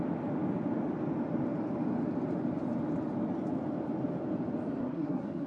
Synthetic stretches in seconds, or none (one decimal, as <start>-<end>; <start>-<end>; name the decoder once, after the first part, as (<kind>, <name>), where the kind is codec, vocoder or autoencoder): 4.8-5.5 (codec, SNAC)